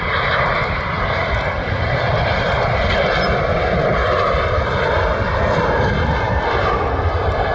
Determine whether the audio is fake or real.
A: real